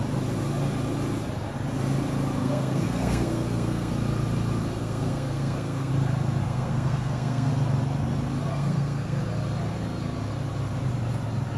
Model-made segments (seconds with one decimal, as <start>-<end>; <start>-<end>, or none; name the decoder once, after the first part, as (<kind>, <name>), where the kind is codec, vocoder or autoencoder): 2.4-3.9 (codec, SNAC); 4.8-5.9; 6.4-7.5; 8.5-9.2